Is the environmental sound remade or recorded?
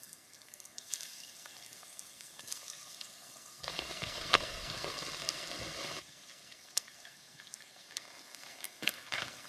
remade